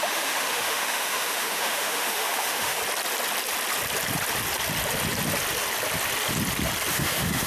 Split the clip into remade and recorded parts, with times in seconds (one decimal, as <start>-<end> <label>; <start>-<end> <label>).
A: 0.0-2.8 remade; 2.8-6.9 recorded; 6.9-7.5 remade